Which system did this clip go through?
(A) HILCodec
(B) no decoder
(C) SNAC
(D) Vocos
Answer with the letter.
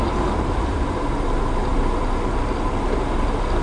B